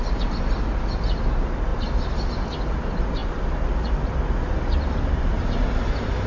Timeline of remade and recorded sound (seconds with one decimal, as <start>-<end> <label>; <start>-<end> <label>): 0.0-6.3 recorded